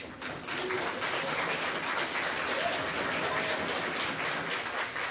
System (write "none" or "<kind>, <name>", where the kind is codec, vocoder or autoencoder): none